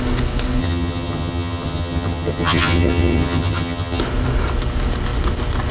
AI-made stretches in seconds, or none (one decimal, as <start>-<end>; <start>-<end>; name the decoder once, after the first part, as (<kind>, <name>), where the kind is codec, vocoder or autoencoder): 0.6-4.0 (vocoder, HiFi-GAN)